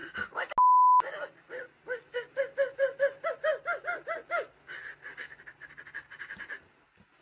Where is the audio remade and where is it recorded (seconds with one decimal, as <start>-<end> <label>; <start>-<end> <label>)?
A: 0.0-7.2 recorded